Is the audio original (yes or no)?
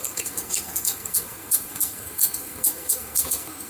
no